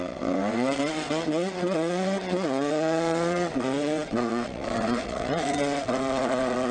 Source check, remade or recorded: remade